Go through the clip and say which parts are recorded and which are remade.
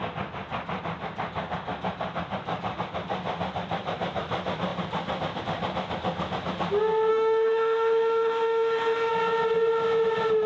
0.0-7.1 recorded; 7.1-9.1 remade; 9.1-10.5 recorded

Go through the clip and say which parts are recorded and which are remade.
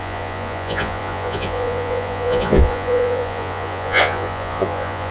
0.0-5.1 remade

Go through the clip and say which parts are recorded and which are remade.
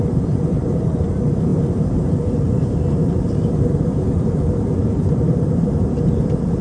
0.0-6.6 remade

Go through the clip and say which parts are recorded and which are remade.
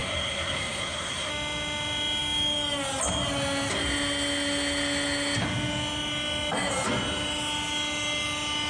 0.0-1.3 remade; 1.3-8.7 recorded